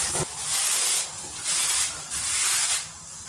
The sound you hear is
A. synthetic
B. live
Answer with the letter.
B